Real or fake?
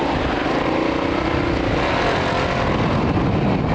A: real